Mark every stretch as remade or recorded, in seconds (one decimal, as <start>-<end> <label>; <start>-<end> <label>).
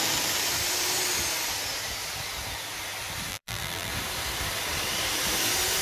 0.0-3.3 recorded; 3.3-3.9 remade; 3.9-5.8 recorded